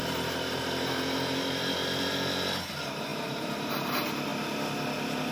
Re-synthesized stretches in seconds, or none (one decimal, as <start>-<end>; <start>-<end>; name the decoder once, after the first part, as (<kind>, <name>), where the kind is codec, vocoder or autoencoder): 0.0-0.6 (vocoder, BigVGAN v2); 3.1-3.7